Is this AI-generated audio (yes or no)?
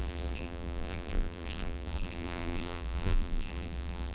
yes